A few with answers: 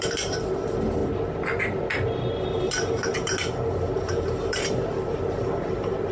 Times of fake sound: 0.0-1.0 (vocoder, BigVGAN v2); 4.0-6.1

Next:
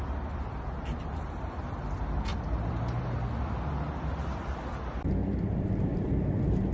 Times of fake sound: 2.3-3.0 (vocoder, BigVGAN v2); 5.2-6.1

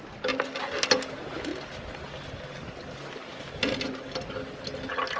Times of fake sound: none

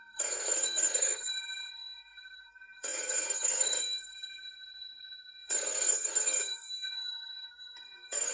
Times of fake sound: 0.0-8.3 (codec, SNAC)

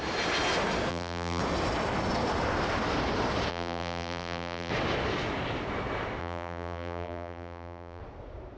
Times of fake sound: 0.9-1.4 (vocoder, BigVGAN v2); 3.5-4.7; 6.2-8.0

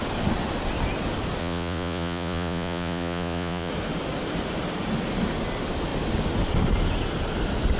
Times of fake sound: 1.4-3.7 (vocoder, Vocos)

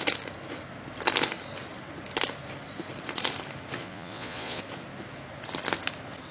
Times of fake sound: 3.8-4.6 (vocoder, Vocos)